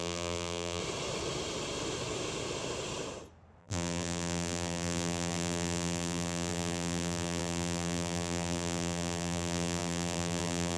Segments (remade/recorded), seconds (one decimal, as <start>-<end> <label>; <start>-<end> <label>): 0.0-0.8 remade; 0.8-3.6 recorded; 3.6-10.8 remade

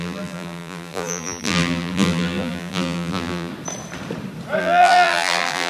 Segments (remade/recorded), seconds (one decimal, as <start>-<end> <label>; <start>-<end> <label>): 0.0-3.5 remade; 3.5-4.6 recorded; 4.6-5.7 remade

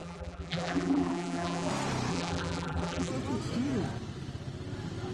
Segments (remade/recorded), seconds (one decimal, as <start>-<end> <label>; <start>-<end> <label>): 0.0-1.7 remade; 1.7-2.1 recorded; 2.1-3.1 remade; 3.1-5.1 recorded

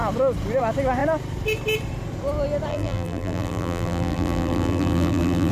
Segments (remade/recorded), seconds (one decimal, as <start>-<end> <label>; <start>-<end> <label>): 0.0-2.7 recorded; 2.7-5.5 remade